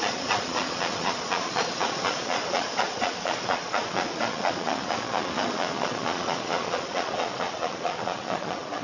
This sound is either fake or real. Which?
fake